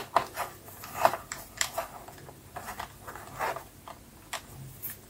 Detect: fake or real real